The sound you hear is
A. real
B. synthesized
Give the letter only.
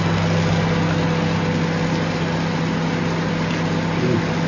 A